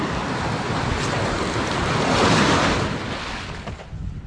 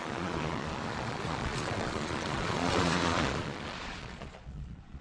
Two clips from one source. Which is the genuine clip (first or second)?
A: first